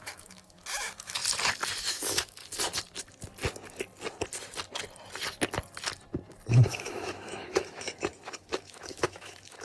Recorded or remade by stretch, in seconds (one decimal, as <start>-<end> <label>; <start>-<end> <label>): 0.0-1.2 remade; 1.2-1.9 recorded; 1.9-2.4 remade; 2.4-6.5 recorded; 6.5-9.6 remade